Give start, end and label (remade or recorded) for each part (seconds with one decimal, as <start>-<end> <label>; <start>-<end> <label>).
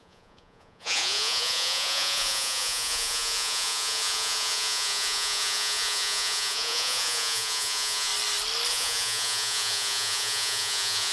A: 0.0-8.1 remade; 8.1-8.7 recorded; 8.7-11.1 remade